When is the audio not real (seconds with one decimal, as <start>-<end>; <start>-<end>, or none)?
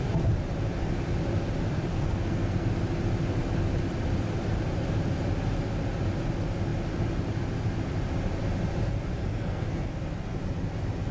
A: 1.9-2.7; 9.2-9.9